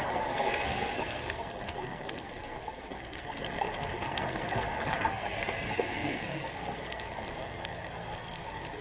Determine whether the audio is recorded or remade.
remade